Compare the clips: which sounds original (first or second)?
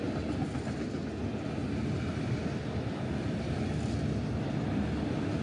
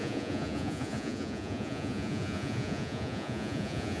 first